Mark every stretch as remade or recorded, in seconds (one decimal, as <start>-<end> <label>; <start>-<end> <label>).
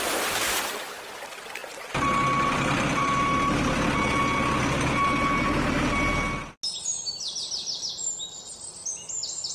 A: 0.0-9.5 recorded